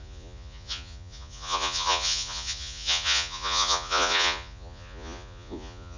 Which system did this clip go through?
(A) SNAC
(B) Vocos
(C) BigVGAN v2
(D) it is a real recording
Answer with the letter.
B